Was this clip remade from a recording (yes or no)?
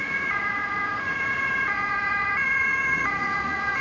yes